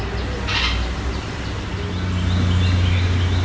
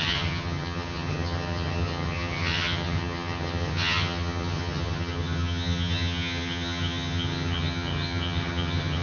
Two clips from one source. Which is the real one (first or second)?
first